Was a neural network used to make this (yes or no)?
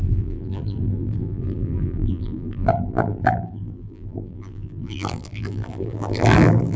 yes